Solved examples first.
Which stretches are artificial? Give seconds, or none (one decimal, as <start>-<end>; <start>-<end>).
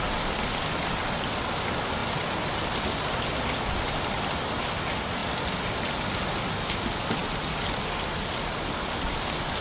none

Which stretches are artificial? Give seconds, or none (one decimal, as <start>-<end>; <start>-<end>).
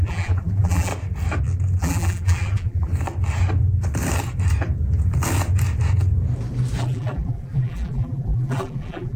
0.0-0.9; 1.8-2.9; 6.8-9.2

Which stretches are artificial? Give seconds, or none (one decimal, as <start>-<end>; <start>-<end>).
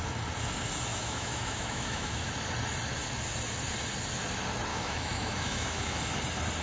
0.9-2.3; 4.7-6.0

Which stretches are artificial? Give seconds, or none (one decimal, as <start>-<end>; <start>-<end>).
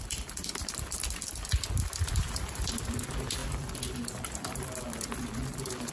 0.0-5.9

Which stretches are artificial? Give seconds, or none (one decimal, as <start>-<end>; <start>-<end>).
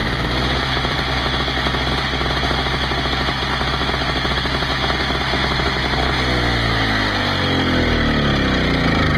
0.0-1.2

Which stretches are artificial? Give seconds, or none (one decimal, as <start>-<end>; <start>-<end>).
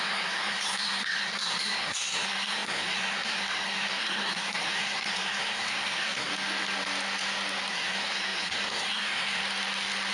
0.0-6.3; 7.7-9.4